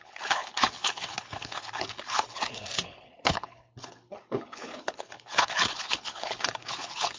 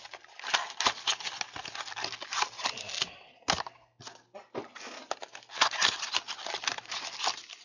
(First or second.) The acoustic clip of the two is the second